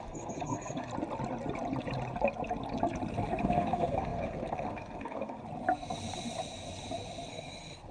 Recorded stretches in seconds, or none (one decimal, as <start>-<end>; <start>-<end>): 0.9-3.4; 5.4-7.3